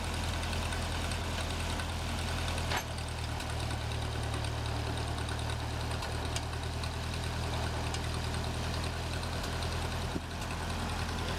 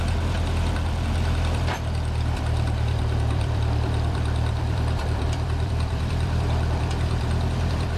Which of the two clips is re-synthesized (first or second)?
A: second